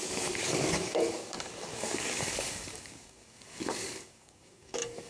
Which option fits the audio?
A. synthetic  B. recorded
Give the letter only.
A